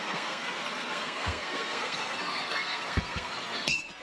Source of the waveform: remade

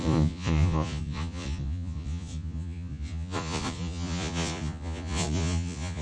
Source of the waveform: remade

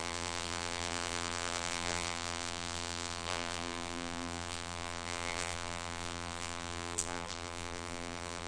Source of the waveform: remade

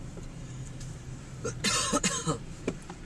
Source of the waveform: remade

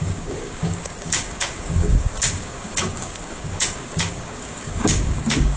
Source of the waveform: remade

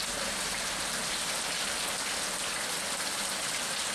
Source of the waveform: recorded